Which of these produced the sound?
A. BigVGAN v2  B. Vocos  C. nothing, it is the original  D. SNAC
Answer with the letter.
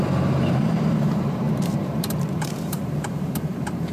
A